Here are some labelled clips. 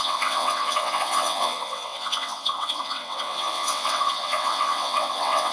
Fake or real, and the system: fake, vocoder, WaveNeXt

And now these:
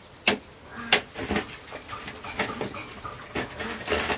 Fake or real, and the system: real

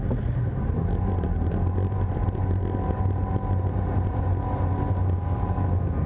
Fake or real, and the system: real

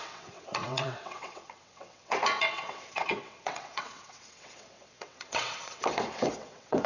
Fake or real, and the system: fake, vocoder, WaveNeXt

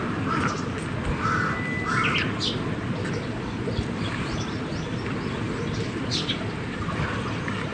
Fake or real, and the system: real